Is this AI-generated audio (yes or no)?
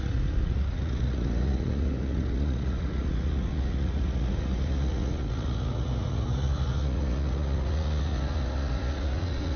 yes